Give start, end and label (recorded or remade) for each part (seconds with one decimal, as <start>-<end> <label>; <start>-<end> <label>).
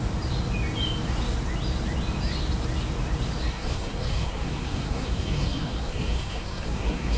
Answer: 0.0-3.5 recorded; 3.5-7.2 remade